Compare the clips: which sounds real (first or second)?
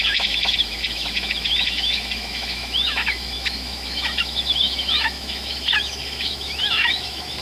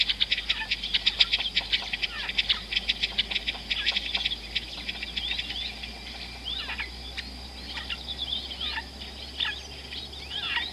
second